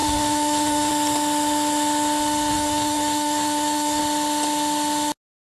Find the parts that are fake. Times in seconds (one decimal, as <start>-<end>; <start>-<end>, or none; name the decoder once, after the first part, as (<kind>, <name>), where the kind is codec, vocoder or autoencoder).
0.0-0.9 (autoencoder, DAC-VAE); 2.5-4.0